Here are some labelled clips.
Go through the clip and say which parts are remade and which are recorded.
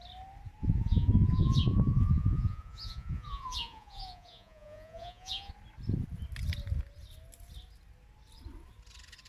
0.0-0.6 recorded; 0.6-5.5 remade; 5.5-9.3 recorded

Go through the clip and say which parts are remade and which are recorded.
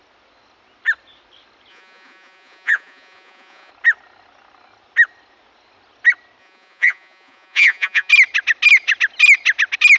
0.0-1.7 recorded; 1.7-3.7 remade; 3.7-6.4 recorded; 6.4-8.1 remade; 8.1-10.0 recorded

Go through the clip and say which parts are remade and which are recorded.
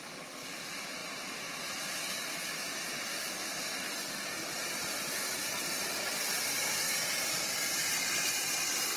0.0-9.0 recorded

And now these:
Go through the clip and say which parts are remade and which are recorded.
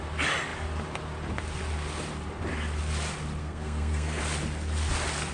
0.0-3.4 recorded; 3.4-4.2 remade; 4.2-5.3 recorded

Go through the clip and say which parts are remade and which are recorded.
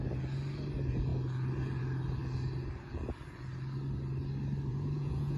0.0-4.7 recorded; 4.7-5.4 remade